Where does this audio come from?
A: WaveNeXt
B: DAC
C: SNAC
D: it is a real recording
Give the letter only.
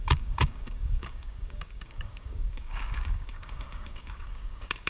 B